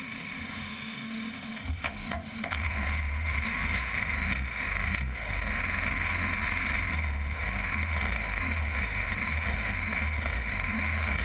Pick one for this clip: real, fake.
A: fake